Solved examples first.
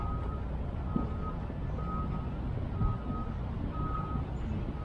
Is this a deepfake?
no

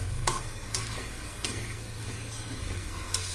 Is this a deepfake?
yes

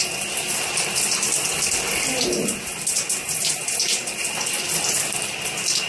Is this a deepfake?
no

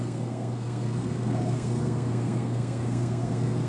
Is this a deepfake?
yes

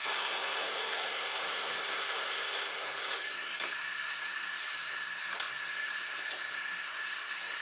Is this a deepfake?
yes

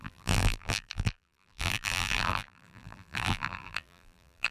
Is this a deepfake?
yes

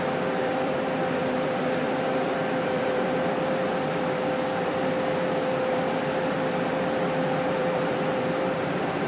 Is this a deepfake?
yes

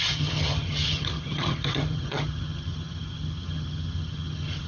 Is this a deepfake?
yes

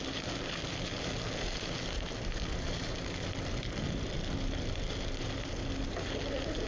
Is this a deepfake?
no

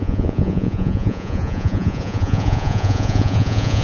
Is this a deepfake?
yes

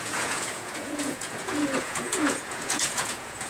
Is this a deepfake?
yes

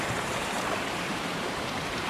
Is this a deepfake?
yes